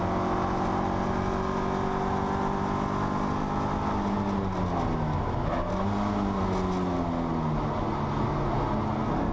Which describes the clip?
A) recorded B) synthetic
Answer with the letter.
A